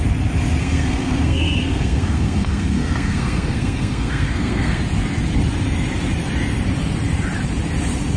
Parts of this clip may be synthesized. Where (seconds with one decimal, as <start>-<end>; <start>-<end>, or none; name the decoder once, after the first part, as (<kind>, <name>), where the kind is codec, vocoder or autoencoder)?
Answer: 0.6-4.8 (codec, SNAC)